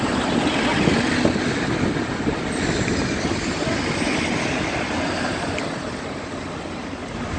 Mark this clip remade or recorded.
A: recorded